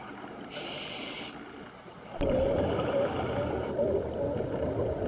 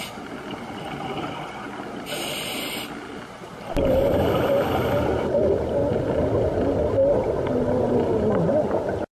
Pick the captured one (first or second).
second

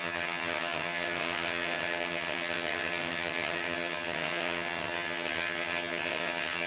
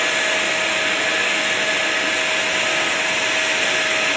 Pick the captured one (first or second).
second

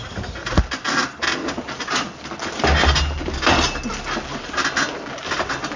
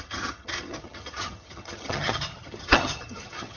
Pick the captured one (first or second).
first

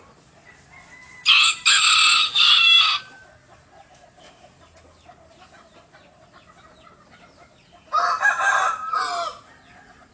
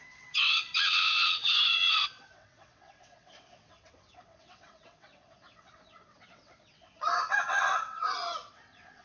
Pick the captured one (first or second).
first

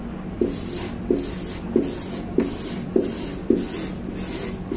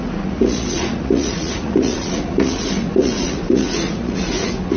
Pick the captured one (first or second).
first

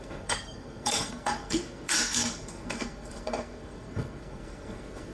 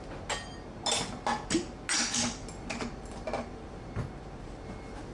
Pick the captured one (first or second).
second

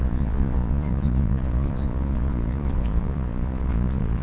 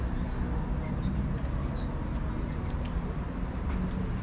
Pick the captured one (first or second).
second